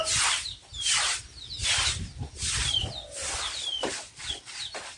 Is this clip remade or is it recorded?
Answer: recorded